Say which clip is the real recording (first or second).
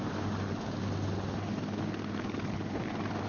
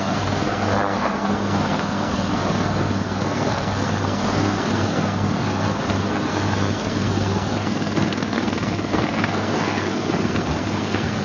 first